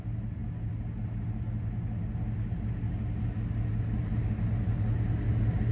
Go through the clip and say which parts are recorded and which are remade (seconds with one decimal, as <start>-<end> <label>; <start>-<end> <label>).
0.0-5.7 recorded